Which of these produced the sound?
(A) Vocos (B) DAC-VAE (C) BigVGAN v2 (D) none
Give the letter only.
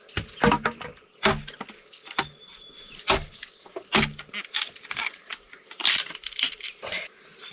D